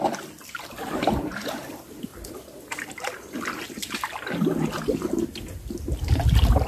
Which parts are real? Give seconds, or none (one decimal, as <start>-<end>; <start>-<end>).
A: 0.0-6.7